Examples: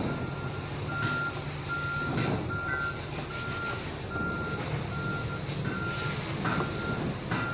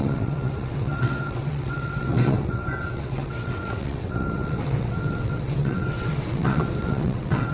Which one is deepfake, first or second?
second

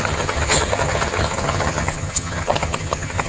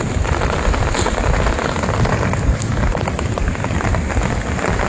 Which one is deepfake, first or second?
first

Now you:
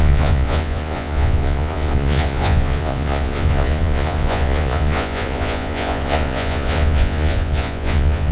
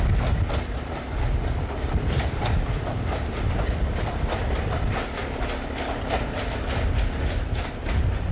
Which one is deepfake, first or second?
first